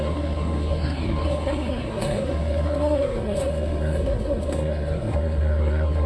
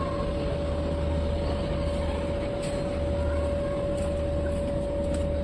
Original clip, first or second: second